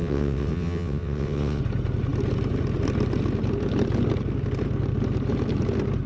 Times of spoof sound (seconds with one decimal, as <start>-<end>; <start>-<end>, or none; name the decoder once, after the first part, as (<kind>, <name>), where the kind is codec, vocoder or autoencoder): 0.0-1.6 (vocoder, WaveNeXt)